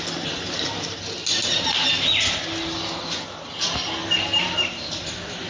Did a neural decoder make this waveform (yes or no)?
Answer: no